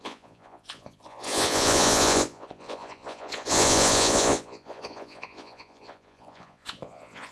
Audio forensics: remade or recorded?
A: remade